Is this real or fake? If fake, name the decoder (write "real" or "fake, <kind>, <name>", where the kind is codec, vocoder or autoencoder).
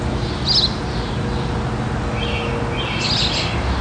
real